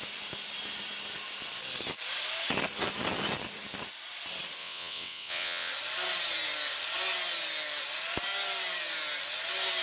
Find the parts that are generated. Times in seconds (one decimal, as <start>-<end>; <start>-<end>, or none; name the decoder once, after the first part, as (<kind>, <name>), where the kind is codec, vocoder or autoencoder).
4.6-5.7 (vocoder, WaveNeXt)